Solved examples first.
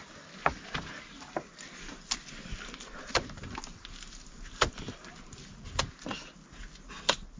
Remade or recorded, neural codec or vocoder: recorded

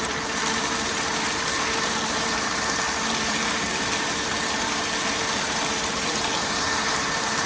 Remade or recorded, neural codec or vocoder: remade, vocoder, BigVGAN v2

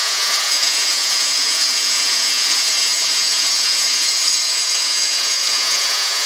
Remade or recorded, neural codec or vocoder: remade, vocoder, Vocos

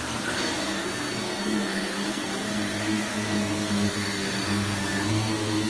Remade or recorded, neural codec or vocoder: remade, codec, SNAC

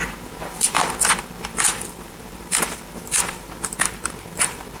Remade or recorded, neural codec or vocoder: remade, vocoder, BigVGAN v2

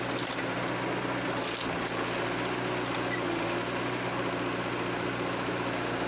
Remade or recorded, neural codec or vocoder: recorded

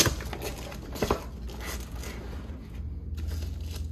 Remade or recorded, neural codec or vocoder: recorded